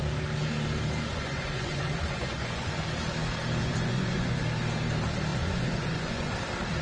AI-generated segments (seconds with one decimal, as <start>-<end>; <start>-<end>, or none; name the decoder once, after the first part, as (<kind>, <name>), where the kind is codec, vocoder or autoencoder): 1.1-2.8 (vocoder, Vocos); 3.6-4.4; 5.3-6.3